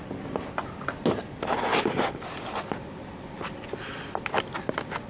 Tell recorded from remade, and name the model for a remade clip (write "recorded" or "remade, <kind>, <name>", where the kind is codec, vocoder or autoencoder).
recorded